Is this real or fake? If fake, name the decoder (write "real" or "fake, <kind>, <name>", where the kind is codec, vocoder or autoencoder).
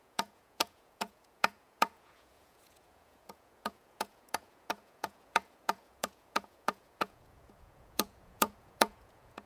fake, vocoder, Vocos